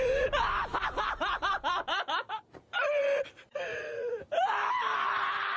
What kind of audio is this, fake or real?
fake